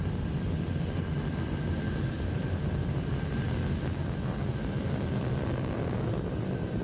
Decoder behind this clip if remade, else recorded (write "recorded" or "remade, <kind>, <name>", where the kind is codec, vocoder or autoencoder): recorded